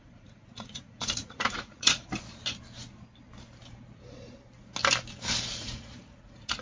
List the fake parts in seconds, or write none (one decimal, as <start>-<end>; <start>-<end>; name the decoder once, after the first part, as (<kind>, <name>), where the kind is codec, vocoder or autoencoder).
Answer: 0.0-2.1 (vocoder, Vocos); 5.5-6.6